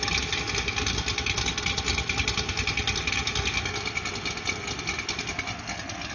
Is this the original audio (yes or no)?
yes